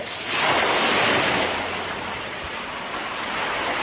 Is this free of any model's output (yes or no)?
yes